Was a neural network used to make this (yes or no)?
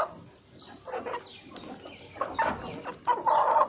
no